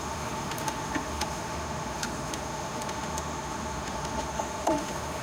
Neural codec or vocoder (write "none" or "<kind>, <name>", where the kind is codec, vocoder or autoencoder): autoencoder, DAC-VAE